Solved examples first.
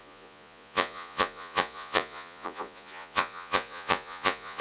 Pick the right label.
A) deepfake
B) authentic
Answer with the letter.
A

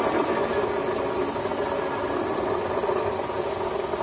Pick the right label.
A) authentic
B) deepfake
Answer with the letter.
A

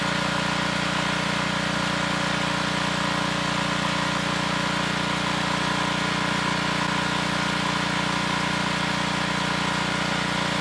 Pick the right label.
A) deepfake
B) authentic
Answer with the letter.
B